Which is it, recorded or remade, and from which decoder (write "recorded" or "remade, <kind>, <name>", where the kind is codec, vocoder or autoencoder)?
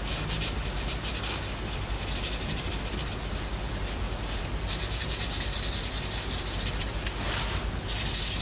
recorded